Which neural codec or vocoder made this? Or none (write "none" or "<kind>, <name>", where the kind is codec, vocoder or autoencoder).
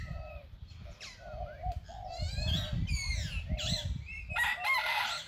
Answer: vocoder, BigVGAN v2